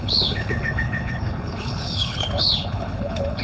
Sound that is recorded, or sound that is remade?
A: remade